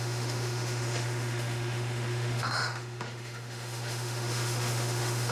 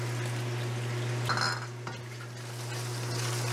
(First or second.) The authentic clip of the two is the second